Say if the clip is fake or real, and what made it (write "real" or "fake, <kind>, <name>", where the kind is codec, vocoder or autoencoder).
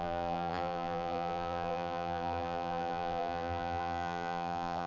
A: fake, vocoder, BigVGAN v2